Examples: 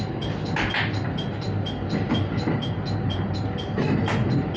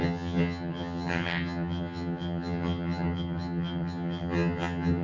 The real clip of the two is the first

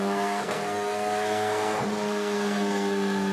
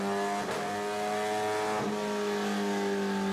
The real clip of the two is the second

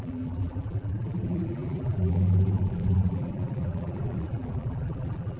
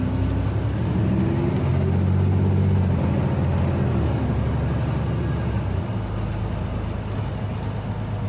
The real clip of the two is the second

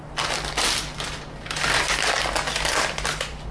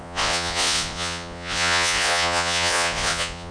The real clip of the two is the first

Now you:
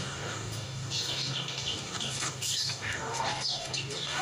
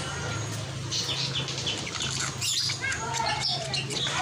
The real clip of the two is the second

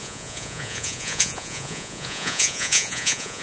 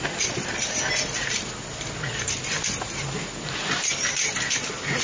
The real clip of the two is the second